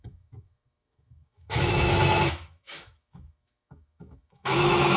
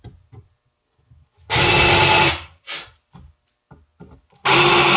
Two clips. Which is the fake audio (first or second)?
first